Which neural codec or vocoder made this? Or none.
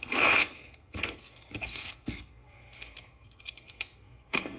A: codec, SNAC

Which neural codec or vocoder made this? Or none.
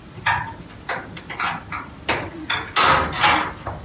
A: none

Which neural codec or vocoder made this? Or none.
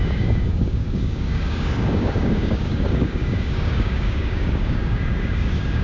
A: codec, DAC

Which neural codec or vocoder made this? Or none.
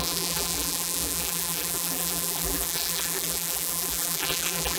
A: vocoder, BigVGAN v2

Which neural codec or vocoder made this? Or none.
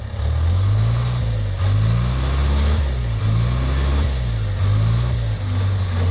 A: none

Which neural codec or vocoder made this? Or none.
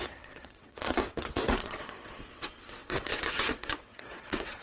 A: vocoder, WaveNeXt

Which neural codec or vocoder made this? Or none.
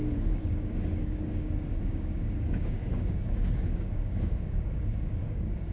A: codec, DAC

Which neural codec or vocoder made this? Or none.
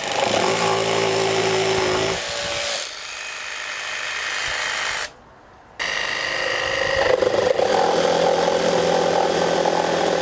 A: none